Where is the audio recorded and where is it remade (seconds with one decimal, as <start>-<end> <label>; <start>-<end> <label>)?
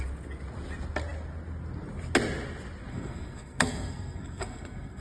0.0-2.9 recorded; 2.9-5.0 remade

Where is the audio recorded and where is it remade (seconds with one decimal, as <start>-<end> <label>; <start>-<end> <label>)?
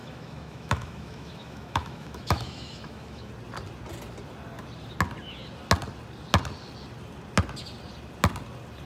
0.0-3.3 remade; 3.3-8.8 recorded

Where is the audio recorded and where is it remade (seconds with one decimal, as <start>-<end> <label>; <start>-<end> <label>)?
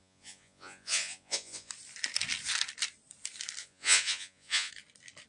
0.0-1.7 remade; 1.7-3.6 recorded; 3.6-4.7 remade; 4.7-5.3 recorded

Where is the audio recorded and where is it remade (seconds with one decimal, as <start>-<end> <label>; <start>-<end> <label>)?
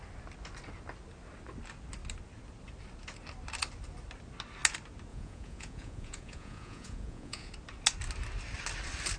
0.0-5.1 recorded; 5.1-7.5 remade; 7.5-9.2 recorded